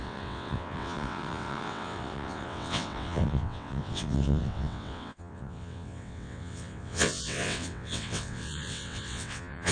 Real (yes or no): no